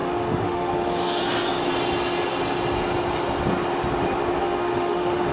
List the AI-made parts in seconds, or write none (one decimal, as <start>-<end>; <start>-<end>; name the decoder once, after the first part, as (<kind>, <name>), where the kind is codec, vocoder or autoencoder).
0.0-1.2 (autoencoder, DAC-VAE); 4.4-5.3